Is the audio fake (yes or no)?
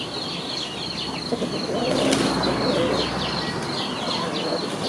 no